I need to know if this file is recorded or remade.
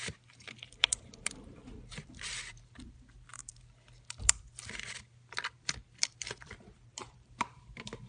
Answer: remade